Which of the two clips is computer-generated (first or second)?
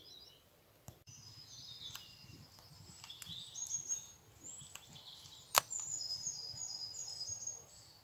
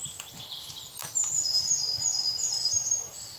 second